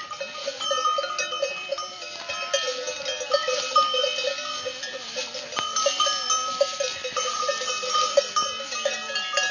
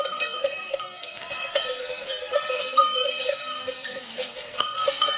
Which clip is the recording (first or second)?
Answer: first